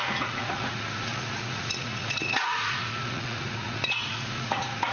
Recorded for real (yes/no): no